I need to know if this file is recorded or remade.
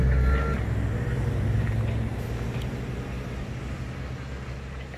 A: recorded